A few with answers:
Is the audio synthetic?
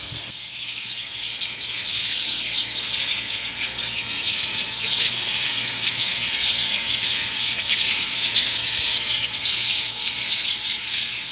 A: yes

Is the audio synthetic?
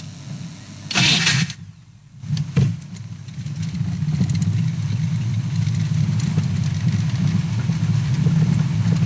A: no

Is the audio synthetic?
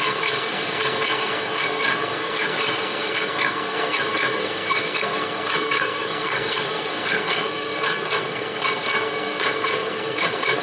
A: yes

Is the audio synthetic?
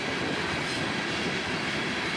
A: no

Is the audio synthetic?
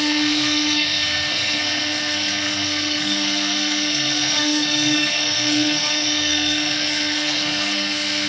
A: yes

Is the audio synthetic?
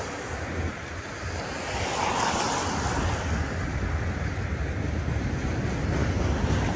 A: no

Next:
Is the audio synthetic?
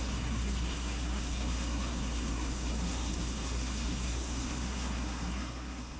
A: yes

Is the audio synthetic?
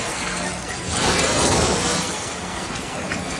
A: yes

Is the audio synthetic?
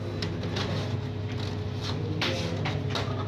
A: no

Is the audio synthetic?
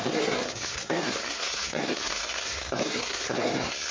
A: yes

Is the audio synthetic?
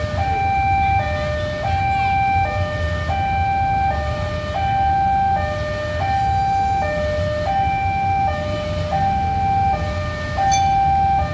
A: no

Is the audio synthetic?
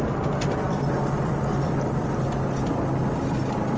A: no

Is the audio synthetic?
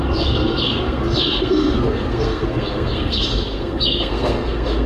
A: yes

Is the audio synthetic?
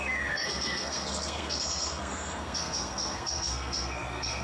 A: yes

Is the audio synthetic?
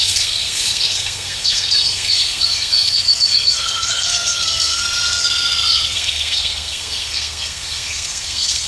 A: yes